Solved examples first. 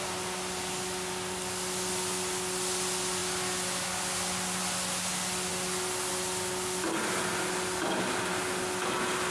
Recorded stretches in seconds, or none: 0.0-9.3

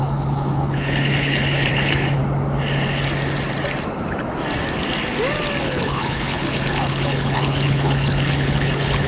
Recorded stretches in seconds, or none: 2.2-5.6